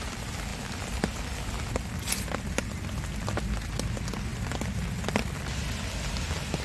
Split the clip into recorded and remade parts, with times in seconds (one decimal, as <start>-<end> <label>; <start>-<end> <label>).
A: 0.0-6.6 recorded